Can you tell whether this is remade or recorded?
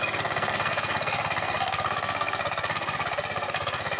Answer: remade